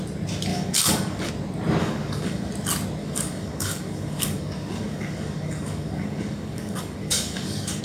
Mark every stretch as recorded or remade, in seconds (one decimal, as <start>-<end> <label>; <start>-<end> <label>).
0.0-0.5 recorded; 0.5-1.3 remade; 1.3-1.8 recorded; 1.8-2.5 remade; 2.5-3.0 recorded; 3.0-7.8 remade